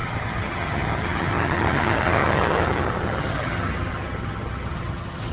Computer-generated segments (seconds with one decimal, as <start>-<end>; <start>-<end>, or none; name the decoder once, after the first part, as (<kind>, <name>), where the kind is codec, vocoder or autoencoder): 0.0-5.3 (vocoder, HiFi-GAN)